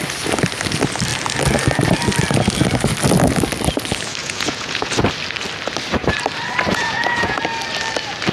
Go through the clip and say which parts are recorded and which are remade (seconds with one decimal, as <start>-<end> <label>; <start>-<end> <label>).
0.0-4.2 recorded; 4.2-4.9 remade; 4.9-6.7 recorded; 6.7-7.4 remade; 7.4-8.3 recorded